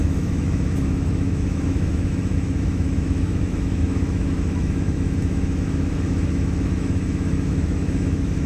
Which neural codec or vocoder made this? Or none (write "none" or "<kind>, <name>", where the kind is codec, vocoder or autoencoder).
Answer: autoencoder, DAC-VAE